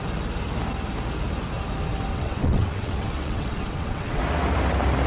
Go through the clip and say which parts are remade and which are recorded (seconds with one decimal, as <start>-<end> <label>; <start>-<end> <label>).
0.0-2.1 recorded; 2.1-4.2 remade; 4.2-5.1 recorded